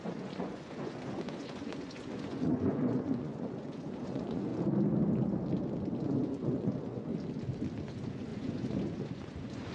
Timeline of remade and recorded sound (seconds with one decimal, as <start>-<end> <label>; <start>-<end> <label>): 0.0-4.5 remade; 4.5-6.0 recorded; 6.0-7.1 remade; 7.1-7.8 recorded; 7.8-9.7 remade